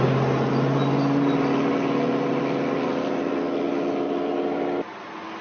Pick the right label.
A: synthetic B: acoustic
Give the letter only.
B